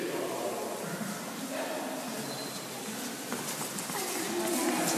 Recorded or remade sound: recorded